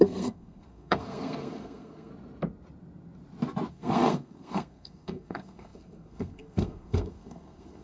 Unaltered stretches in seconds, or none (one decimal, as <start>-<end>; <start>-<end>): 2.1-3.7